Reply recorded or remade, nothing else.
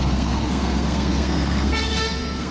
remade